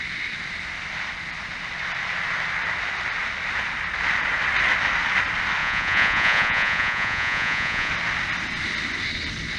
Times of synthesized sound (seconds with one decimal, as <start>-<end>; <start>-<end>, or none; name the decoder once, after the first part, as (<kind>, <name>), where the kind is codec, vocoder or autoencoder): 5.6-7.9 (vocoder, Vocos)